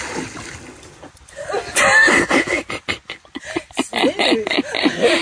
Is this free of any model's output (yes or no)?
yes